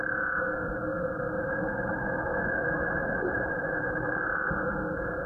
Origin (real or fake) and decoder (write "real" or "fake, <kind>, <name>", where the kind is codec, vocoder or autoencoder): real